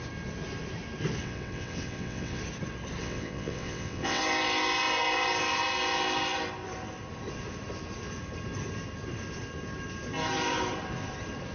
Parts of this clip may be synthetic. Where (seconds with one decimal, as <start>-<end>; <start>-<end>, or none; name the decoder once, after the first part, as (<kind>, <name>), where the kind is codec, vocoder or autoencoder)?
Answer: 1.2-2.4 (vocoder, WaveNeXt); 3.0-4.2